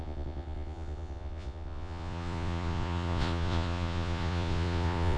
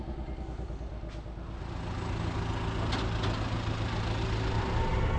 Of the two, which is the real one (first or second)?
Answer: second